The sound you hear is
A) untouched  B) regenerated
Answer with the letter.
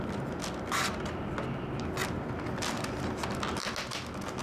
A